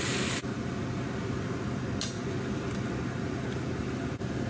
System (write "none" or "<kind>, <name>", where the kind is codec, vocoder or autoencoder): none